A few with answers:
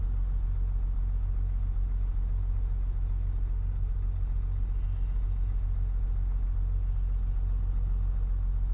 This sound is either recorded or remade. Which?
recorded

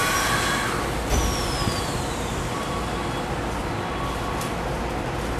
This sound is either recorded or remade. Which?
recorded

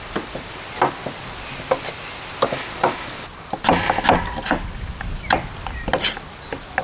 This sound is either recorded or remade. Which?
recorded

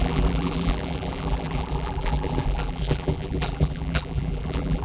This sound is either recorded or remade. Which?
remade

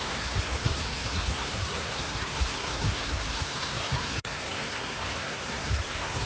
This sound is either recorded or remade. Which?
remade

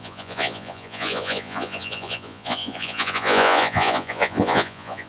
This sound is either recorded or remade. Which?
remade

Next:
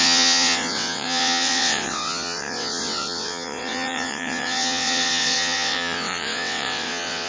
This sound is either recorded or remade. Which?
remade